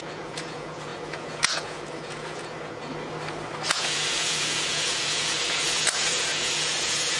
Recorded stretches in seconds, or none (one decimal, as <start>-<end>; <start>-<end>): 2.9-3.7